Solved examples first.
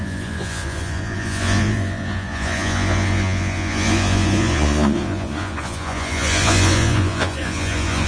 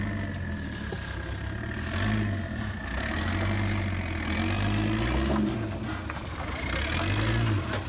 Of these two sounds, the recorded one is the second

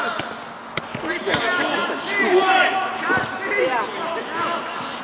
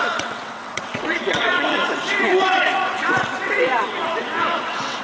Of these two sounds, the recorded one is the first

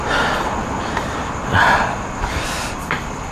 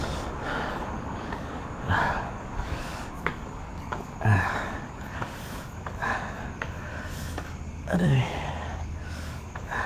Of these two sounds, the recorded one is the first